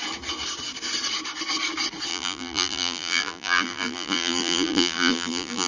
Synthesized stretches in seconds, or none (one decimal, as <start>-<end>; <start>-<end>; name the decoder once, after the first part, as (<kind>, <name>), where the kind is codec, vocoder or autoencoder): 2.1-5.7 (vocoder, BigVGAN v2)